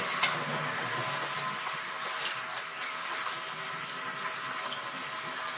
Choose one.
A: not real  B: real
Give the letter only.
B